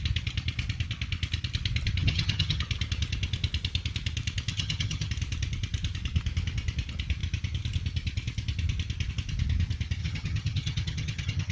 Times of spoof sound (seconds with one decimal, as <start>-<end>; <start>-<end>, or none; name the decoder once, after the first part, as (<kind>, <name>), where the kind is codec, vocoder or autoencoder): 2.0-2.6 (vocoder, HiFi-GAN); 4.5-5.1; 10.0-11.5